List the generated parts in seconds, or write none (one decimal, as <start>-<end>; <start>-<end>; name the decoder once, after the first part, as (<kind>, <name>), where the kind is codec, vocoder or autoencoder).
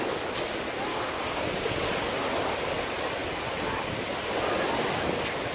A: 0.9-1.9 (codec, DAC)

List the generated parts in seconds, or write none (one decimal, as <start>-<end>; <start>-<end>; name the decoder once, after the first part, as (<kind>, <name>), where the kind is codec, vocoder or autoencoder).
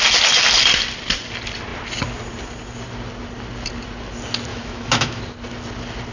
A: 4.5-5.2 (autoencoder, DAC-VAE)